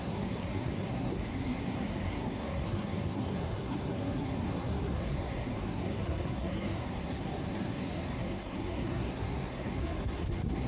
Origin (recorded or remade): remade